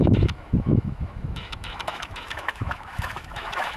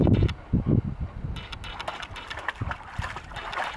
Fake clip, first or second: first